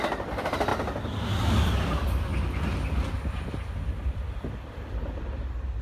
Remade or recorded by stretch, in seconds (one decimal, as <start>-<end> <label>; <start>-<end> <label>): 0.0-0.7 remade; 0.7-1.5 recorded; 1.5-2.3 remade; 2.3-3.3 recorded; 3.3-5.8 remade